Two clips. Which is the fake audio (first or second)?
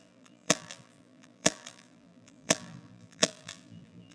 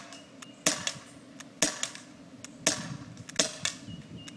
first